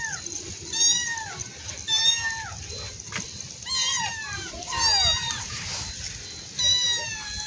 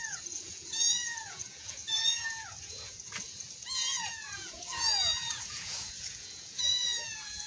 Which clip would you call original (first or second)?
first